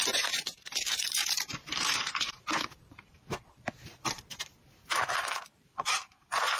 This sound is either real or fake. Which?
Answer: fake